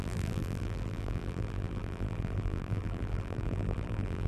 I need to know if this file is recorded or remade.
remade